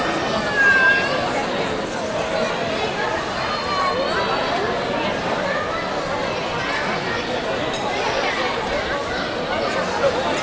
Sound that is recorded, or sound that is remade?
recorded